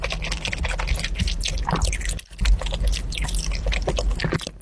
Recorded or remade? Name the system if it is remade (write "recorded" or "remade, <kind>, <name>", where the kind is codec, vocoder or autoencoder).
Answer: recorded